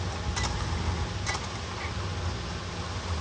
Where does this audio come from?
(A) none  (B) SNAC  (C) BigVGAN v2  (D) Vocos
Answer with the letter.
A